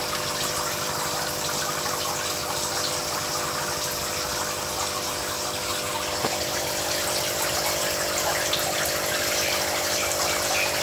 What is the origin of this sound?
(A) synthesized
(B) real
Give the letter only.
B